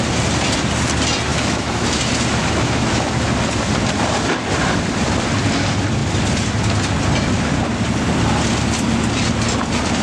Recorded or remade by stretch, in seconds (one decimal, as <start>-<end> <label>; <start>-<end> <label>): 0.0-1.3 recorded; 1.3-2.0 remade; 2.0-2.4 recorded; 2.4-3.1 remade; 3.1-10.0 recorded

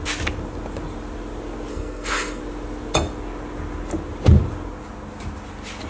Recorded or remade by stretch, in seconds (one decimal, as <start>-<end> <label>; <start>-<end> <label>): 0.0-1.7 recorded; 1.7-2.4 remade; 2.4-5.9 recorded